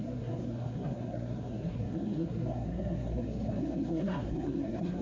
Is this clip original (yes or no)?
no